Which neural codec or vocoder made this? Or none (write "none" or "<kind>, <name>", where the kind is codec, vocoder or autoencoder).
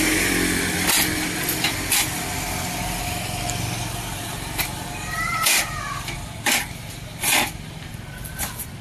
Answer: vocoder, BigVGAN v2